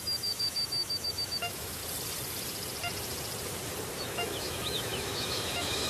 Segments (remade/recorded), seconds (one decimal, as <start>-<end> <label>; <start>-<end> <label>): 0.0-1.8 remade; 1.8-4.0 recorded; 4.0-5.9 remade